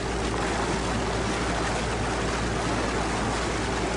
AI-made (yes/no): no